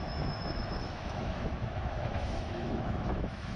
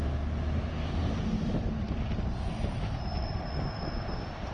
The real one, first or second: second